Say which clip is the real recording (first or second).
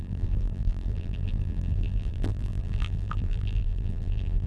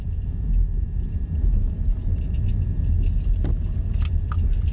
second